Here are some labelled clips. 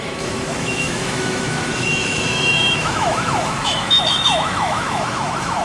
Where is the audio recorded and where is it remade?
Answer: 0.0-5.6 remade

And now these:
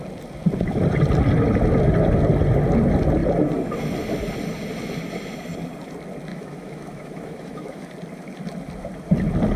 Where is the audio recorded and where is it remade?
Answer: 0.0-6.3 recorded; 6.3-7.9 remade; 7.9-9.6 recorded

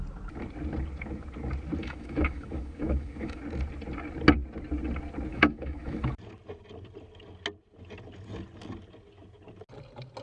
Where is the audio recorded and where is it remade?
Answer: 0.0-1.8 recorded; 1.8-3.4 remade; 3.4-5.3 recorded; 5.3-6.1 remade; 6.1-10.2 recorded

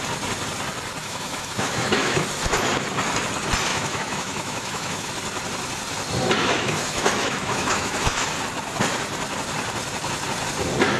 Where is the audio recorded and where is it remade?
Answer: 0.0-1.0 recorded; 1.0-2.2 remade; 2.2-3.7 recorded; 3.7-5.1 remade; 5.1-6.4 recorded; 6.4-8.3 remade; 8.3-11.0 recorded

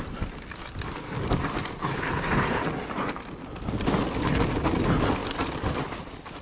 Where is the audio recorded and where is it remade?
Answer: 0.0-6.4 recorded

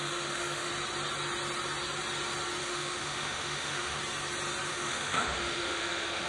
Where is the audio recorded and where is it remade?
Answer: 0.0-0.7 remade; 0.7-2.6 recorded; 2.6-4.0 remade; 4.0-4.7 recorded; 4.7-6.3 remade